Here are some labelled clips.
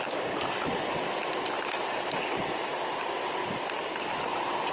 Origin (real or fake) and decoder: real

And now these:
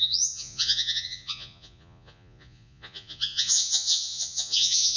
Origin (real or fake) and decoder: fake, vocoder, Vocos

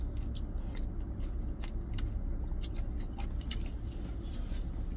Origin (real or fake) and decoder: real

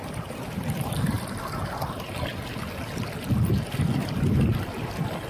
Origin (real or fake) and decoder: real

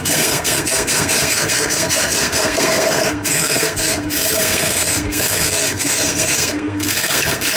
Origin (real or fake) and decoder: fake, codec, SNAC